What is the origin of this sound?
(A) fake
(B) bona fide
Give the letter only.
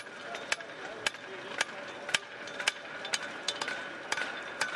B